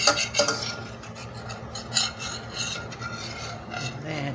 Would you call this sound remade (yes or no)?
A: no